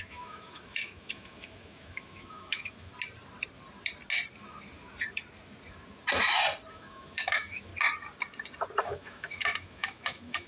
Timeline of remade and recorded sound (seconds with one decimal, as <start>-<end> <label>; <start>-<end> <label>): 0.0-2.9 remade; 2.9-6.7 recorded; 6.7-7.7 remade; 7.7-8.8 recorded; 8.8-10.5 remade